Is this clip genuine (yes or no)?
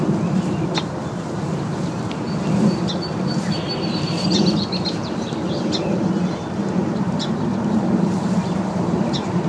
no